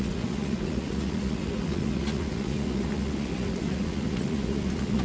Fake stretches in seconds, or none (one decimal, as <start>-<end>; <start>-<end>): 0.0-5.0